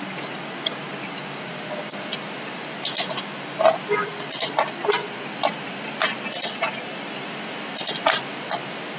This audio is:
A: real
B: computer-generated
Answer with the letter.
A